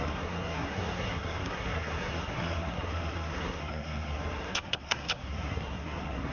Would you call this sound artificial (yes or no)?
yes